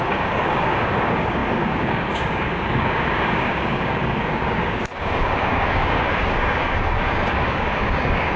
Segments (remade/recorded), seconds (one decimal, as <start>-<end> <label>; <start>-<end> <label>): 0.0-8.4 remade